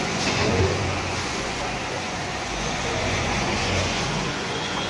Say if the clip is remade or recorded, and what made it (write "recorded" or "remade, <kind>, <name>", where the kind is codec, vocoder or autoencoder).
remade, vocoder, Vocos